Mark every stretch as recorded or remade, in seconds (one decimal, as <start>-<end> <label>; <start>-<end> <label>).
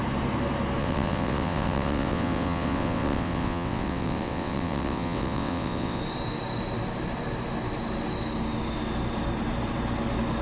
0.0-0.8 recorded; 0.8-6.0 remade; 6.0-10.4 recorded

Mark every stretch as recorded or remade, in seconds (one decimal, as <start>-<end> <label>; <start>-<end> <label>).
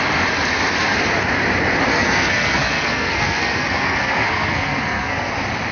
0.0-1.9 recorded; 1.9-5.3 remade; 5.3-5.7 recorded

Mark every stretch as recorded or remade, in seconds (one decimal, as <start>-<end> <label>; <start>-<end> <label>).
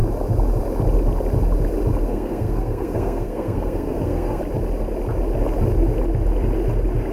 0.0-2.0 recorded; 2.0-4.4 remade; 4.4-7.1 recorded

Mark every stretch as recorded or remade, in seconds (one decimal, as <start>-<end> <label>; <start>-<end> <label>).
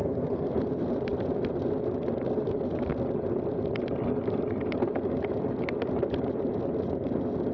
0.0-0.5 remade; 0.5-7.5 recorded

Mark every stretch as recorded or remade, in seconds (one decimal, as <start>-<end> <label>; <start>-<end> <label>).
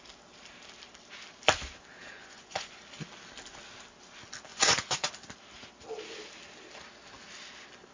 0.0-2.0 recorded; 2.0-2.8 remade; 2.8-4.5 recorded; 4.5-5.1 remade; 5.1-7.9 recorded